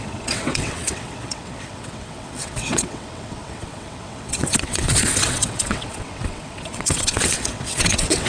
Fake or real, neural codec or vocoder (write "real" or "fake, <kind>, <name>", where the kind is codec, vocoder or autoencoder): fake, vocoder, WaveNeXt